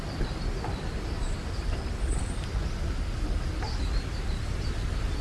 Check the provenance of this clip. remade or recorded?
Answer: recorded